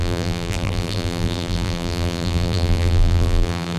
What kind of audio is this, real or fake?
fake